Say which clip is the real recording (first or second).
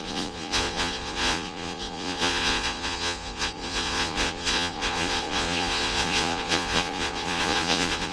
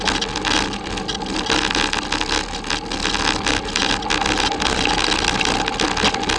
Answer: second